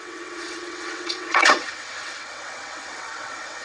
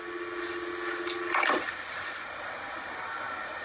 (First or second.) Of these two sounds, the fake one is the first